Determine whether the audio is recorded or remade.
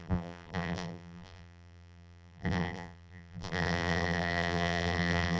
remade